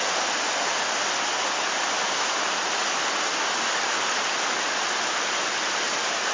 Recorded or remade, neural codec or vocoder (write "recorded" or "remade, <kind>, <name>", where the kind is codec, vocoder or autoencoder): recorded